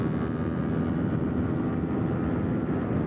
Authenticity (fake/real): real